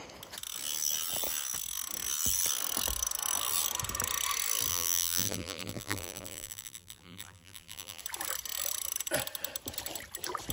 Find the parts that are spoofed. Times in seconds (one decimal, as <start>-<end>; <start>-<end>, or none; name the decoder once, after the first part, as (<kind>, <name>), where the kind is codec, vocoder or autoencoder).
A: 4.7-8.0 (vocoder, BigVGAN v2)

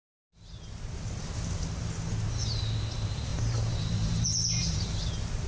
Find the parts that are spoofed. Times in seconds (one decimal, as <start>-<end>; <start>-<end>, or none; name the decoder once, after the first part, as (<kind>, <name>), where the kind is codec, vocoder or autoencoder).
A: 3.3-5.1 (vocoder, BigVGAN v2)

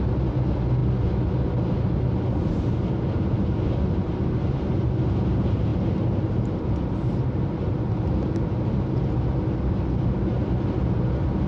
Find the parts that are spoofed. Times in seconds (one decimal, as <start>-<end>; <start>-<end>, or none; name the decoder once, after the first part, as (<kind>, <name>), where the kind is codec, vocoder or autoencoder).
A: none

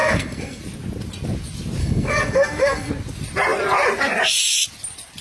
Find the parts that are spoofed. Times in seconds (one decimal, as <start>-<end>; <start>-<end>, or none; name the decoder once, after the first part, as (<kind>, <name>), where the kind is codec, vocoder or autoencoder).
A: 0.0-0.6 (codec, SNAC); 1.8-2.9

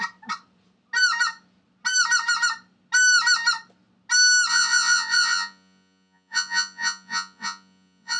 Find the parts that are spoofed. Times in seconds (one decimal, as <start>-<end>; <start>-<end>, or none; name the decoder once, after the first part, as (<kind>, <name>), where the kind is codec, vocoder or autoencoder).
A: 4.5-8.2 (vocoder, Vocos)